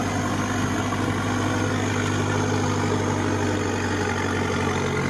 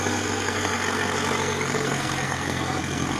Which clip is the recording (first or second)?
first